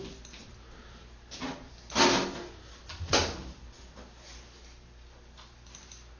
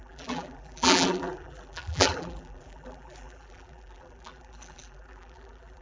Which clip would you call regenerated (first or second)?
second